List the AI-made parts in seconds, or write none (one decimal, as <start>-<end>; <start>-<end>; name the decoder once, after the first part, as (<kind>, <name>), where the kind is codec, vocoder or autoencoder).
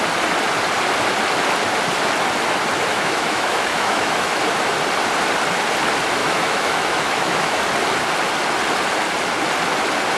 2.9-4.4 (autoencoder, DAC-VAE); 6.2-7.6